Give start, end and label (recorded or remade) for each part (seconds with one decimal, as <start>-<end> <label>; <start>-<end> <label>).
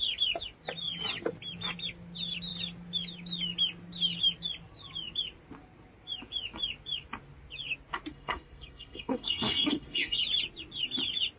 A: 0.0-8.1 recorded; 8.1-10.2 remade; 10.2-11.4 recorded